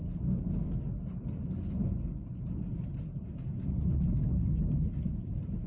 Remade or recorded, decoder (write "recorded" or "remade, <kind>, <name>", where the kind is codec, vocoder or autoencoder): recorded